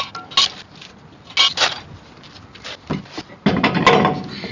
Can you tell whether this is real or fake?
real